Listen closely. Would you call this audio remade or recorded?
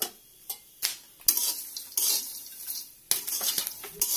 recorded